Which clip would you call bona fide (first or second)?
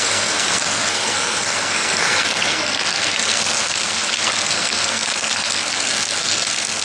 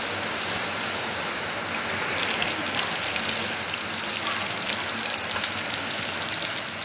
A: second